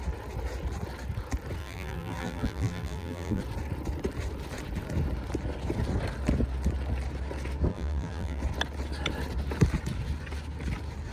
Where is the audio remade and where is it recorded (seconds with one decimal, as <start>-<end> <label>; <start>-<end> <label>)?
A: 0.0-1.6 recorded; 1.6-3.4 remade; 3.4-7.7 recorded; 7.7-8.4 remade; 8.4-11.1 recorded